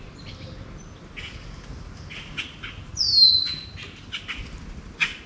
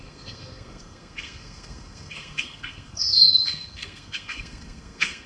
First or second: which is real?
first